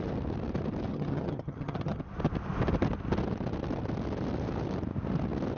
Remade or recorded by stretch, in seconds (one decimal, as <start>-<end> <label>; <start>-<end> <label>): 0.0-0.9 recorded; 0.9-2.0 remade; 2.0-5.6 recorded